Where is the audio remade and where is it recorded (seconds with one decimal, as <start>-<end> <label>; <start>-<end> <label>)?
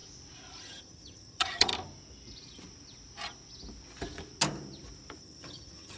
0.0-0.6 recorded; 0.6-1.7 remade; 1.7-5.2 recorded; 5.2-6.0 remade